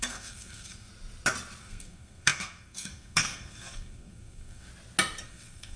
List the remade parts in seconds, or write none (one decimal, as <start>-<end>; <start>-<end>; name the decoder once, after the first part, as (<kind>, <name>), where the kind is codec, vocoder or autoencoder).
0.0-0.9 (codec, SNAC); 1.6-4.7; 5.2-5.8